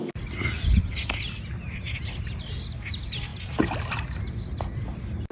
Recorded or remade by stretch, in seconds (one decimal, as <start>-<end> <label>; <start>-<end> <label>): 0.0-5.3 recorded